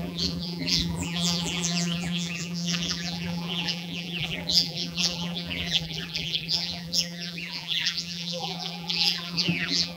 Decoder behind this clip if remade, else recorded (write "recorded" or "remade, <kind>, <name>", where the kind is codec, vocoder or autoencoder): remade, vocoder, BigVGAN v2